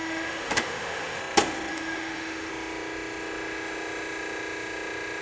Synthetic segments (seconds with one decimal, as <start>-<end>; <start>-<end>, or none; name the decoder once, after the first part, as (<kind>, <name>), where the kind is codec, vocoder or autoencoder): 0.0-1.2 (autoencoder, DAC-VAE); 1.7-2.5